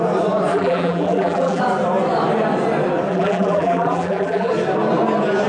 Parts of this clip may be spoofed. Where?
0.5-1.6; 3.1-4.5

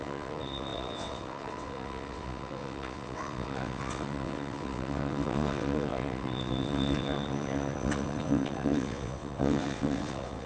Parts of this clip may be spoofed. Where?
0.0-10.5

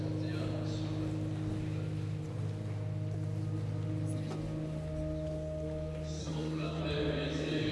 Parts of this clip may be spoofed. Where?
6.2-6.8

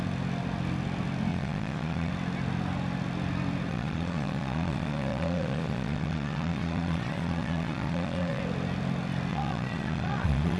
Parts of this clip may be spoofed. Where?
1.3-2.1; 3.7-8.4; 9.3-10.6